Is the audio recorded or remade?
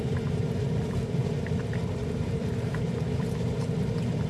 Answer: remade